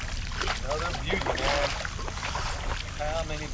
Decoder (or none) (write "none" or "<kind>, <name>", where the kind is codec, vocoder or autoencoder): none